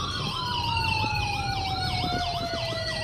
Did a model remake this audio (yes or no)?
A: no